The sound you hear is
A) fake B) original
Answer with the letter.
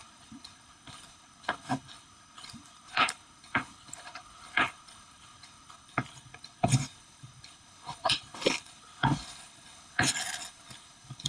A